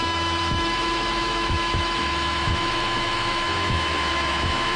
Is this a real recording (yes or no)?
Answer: no